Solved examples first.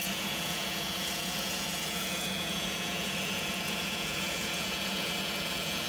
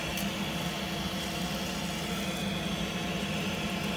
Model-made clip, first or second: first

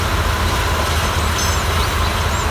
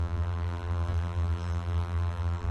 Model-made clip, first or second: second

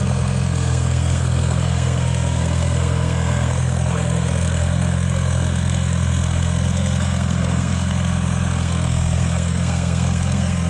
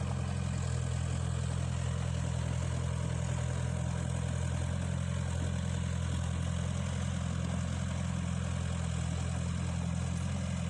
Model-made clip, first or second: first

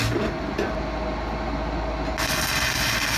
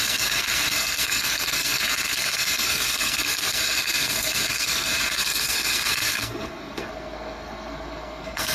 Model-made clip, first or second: second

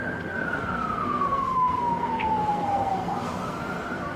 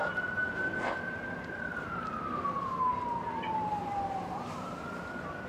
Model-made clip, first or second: first